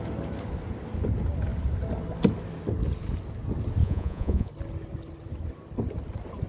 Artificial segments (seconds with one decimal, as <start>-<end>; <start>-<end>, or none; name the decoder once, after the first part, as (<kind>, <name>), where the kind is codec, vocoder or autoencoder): 3.8-4.5 (vocoder, Vocos)

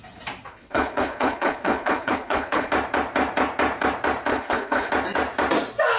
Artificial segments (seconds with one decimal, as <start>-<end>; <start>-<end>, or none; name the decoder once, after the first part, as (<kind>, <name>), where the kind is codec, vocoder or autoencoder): 0.5-2.7 (codec, HILCodec); 4.3-4.9